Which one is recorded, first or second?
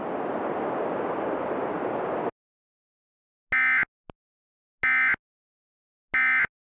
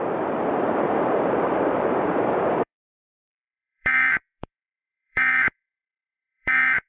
first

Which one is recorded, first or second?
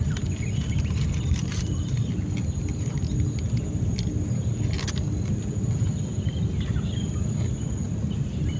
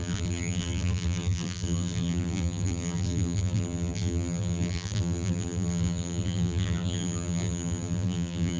first